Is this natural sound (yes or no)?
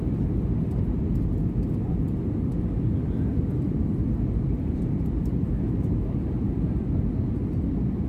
no